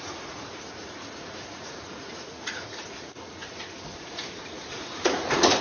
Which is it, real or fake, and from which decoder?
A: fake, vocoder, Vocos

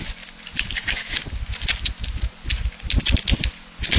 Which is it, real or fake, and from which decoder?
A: real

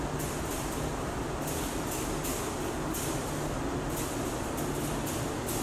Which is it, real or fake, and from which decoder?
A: real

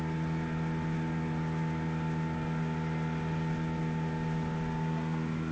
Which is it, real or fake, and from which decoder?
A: real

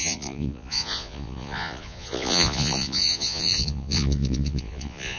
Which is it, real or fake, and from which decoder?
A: fake, vocoder, Vocos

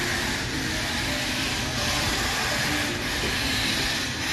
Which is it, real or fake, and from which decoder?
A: fake, vocoder, BigVGAN v2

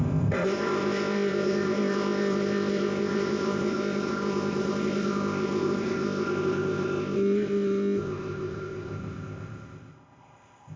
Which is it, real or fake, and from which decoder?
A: fake, codec, ZipCodec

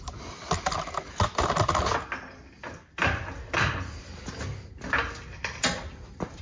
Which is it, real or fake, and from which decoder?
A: real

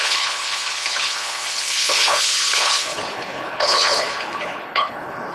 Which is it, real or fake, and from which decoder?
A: fake, codec, HILCodec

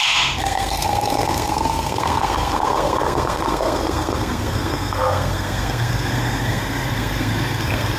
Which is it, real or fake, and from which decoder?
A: fake, codec, SNAC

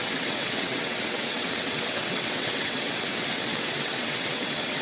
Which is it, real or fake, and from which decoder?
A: fake, vocoder, WaveNeXt